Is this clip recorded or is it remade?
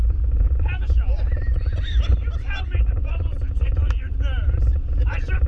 recorded